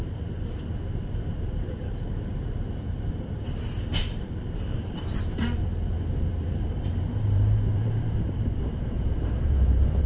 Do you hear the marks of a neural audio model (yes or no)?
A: yes